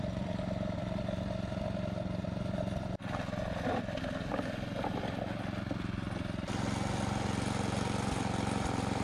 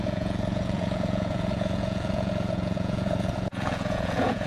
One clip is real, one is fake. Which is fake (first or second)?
second